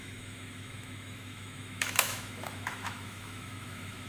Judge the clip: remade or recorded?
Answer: remade